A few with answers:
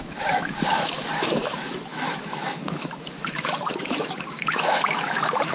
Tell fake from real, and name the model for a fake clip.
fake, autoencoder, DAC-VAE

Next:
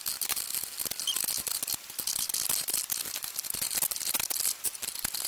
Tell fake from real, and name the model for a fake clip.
real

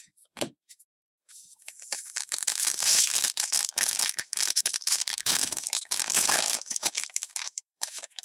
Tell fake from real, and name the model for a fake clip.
fake, autoencoder, DAC-VAE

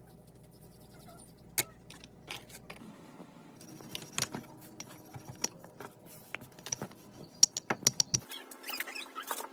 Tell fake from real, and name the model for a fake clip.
real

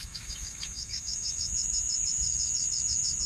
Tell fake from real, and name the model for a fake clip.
fake, autoencoder, DAC-VAE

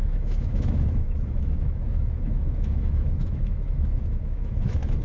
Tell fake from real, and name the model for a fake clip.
fake, autoencoder, DAC-VAE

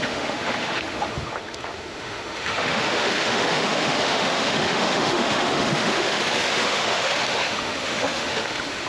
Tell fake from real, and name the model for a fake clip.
fake, autoencoder, DAC-VAE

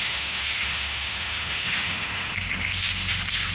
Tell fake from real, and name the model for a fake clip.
fake, autoencoder, DAC-VAE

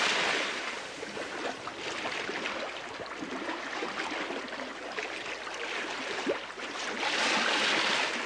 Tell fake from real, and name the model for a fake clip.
real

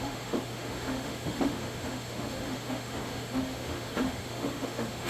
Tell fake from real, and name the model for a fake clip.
fake, autoencoder, DAC-VAE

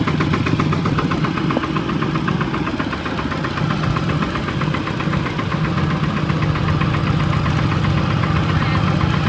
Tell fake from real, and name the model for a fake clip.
real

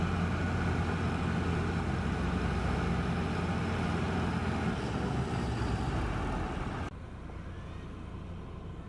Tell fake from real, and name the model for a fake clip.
real